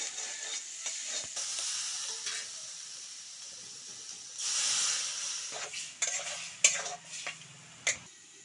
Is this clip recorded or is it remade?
recorded